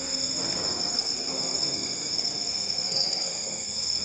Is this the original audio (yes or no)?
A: no